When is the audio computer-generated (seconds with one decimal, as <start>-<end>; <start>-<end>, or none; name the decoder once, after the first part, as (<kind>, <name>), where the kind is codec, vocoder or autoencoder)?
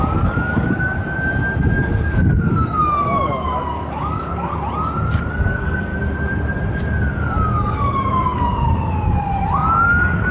0.0-1.0 (codec, DAC); 2.0-4.5; 5.3-5.9; 7.1-10.3